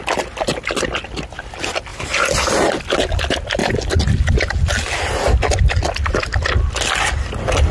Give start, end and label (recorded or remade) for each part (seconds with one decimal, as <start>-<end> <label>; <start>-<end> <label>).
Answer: 0.0-7.7 recorded